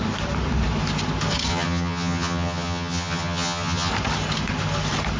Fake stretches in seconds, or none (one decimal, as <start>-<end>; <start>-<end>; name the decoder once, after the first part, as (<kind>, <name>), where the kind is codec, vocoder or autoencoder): 1.5-3.9 (vocoder, HiFi-GAN)